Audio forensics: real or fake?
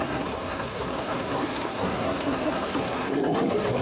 fake